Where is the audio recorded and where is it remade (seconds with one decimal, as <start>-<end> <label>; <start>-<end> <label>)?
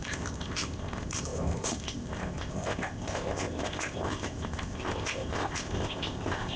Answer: 0.0-6.6 remade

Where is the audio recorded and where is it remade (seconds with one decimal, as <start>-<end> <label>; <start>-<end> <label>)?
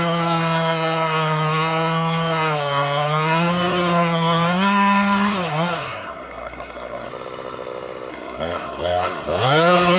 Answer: 0.0-7.1 remade; 7.1-8.1 recorded; 8.1-10.0 remade